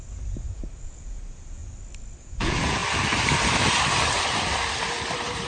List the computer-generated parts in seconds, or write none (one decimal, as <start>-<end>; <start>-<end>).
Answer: 0.0-1.6; 2.2-2.8